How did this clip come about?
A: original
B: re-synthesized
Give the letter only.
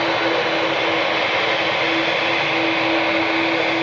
A